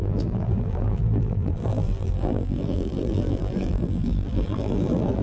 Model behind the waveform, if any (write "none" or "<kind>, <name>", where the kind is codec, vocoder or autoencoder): vocoder, BigVGAN v2